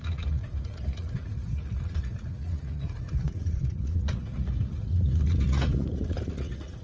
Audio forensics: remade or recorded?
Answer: remade